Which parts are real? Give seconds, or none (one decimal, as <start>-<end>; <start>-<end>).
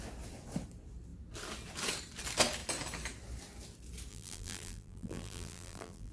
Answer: 0.0-4.1